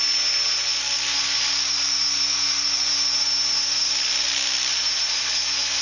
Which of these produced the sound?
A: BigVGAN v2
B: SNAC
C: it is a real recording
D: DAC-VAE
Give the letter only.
C